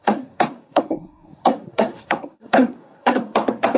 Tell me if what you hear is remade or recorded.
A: remade